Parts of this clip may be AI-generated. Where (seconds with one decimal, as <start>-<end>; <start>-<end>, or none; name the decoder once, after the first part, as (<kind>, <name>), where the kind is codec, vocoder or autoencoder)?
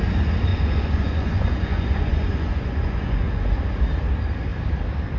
0.5-3.6 (vocoder, Vocos)